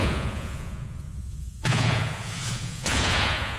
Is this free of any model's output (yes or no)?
no